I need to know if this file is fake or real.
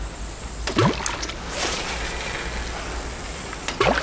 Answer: real